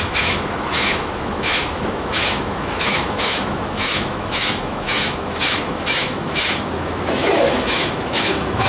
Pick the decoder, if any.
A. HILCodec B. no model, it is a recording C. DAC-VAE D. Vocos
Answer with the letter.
C